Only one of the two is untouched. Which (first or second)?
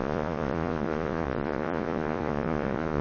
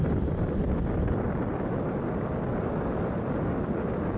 second